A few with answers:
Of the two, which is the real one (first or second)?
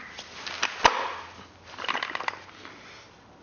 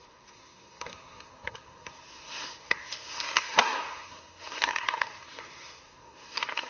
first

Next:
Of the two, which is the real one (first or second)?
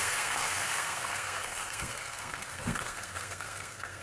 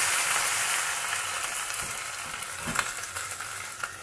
second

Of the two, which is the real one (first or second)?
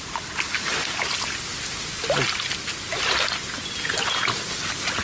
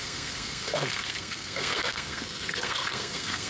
first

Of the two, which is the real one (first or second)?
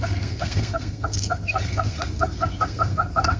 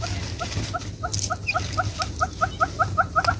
second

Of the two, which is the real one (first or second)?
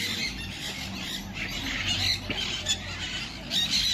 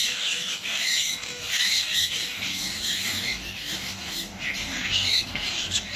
first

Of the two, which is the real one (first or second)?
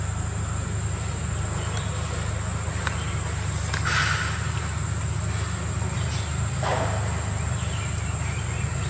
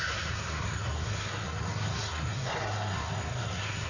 first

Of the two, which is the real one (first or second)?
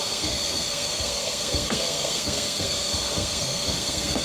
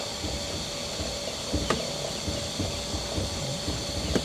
second